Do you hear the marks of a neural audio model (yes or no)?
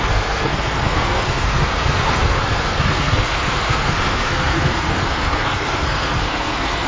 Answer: yes